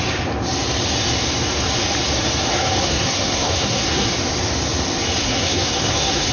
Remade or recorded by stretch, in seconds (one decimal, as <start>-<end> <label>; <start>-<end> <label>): 0.0-2.8 recorded; 2.8-4.1 remade; 4.1-5.2 recorded; 5.2-6.3 remade